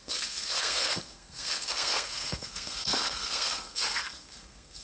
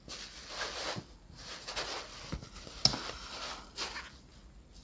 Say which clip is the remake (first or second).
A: first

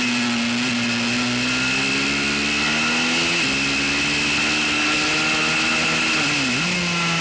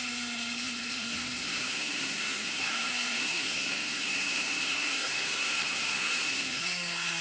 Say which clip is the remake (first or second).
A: second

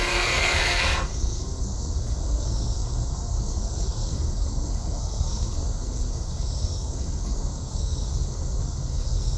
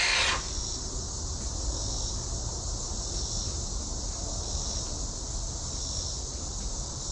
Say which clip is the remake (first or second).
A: first